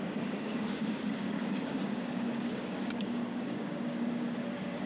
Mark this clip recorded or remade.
remade